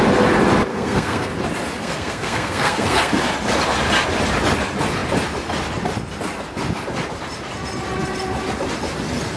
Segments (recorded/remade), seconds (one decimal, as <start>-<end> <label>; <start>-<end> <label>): 0.0-0.7 recorded; 0.7-1.3 remade; 1.3-1.8 recorded; 1.8-3.1 remade; 3.1-9.4 recorded